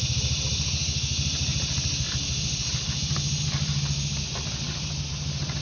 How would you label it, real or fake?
real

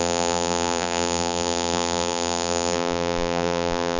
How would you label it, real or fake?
fake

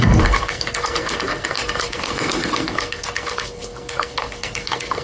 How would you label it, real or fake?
fake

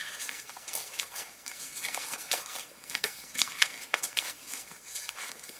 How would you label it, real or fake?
fake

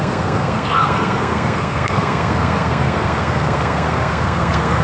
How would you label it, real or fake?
fake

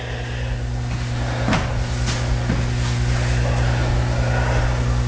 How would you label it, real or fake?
real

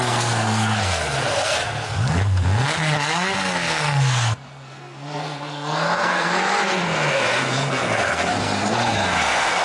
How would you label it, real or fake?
fake